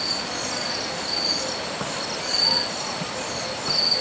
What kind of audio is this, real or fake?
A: real